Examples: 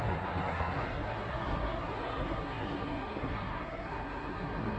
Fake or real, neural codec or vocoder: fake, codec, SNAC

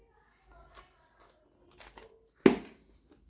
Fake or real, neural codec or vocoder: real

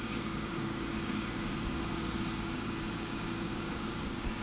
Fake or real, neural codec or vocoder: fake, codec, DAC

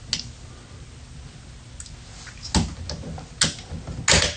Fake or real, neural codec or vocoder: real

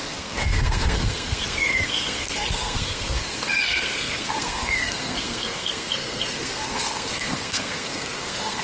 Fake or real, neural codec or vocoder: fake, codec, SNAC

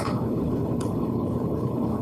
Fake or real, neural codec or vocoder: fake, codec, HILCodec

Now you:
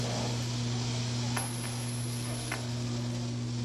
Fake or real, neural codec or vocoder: real